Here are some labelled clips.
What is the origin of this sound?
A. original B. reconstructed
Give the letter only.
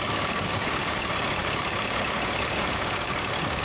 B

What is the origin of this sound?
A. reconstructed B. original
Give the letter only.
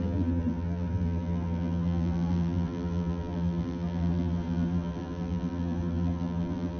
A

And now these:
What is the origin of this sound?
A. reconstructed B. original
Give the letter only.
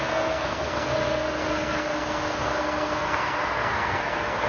A